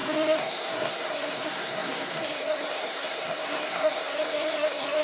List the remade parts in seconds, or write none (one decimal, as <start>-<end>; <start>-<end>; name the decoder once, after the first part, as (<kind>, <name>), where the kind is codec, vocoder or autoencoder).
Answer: 0.0-5.0 (codec, SNAC)